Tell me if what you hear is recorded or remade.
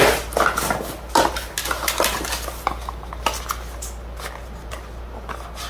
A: recorded